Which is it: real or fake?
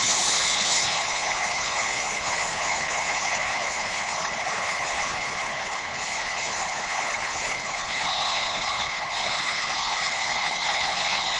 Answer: fake